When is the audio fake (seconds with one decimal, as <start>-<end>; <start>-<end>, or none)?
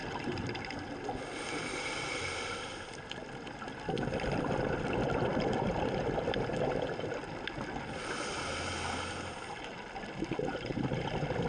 0.0-0.6; 10.5-11.1